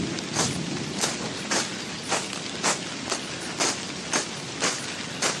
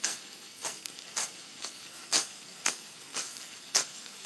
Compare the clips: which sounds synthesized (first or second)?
second